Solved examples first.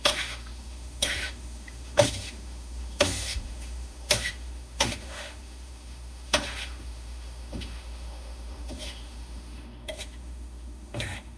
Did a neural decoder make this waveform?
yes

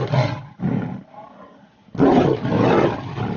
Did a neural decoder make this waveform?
no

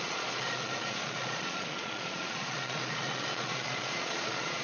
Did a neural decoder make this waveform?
yes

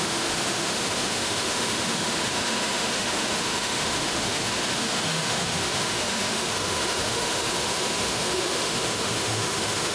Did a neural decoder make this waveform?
yes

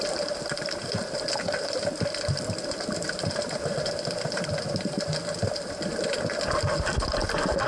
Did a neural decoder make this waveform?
no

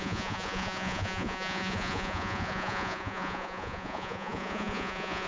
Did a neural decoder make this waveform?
yes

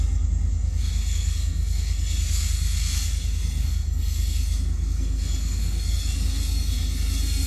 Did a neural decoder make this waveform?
yes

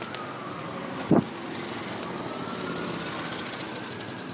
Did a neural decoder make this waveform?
no